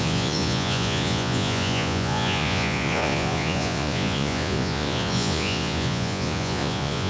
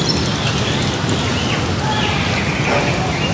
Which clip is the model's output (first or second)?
first